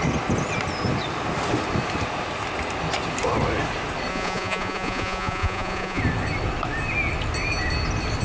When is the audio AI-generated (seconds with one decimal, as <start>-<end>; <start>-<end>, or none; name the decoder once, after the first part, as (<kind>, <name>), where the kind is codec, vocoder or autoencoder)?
4.1-6.0 (vocoder, Vocos)